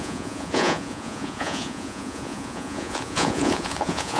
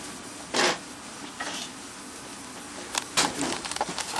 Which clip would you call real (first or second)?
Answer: second